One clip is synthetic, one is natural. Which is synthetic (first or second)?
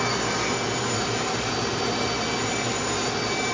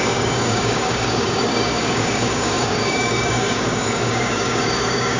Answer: second